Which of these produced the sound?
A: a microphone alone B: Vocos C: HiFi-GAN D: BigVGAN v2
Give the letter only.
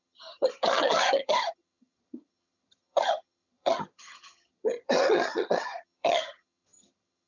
C